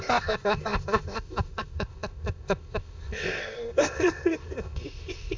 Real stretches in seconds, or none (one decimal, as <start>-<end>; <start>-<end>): none